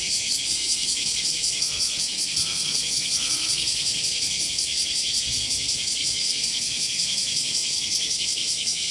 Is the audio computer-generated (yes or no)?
yes